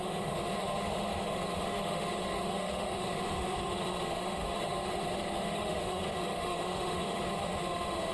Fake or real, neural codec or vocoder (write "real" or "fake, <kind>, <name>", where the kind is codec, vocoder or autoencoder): fake, autoencoder, DAC-VAE